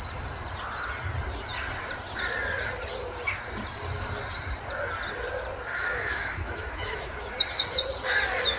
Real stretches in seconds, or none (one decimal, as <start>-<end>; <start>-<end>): 0.0-5.7; 7.3-8.6